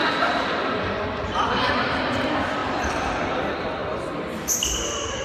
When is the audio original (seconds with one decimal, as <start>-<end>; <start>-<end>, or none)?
0.0-5.2